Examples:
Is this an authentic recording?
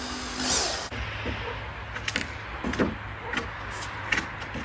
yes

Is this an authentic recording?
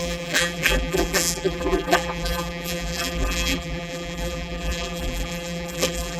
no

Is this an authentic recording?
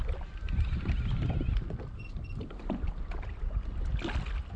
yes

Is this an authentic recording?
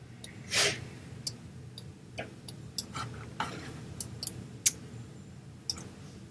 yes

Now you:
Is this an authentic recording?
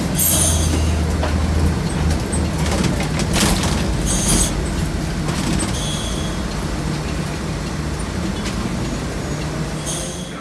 yes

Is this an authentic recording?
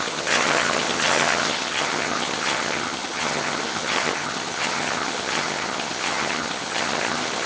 no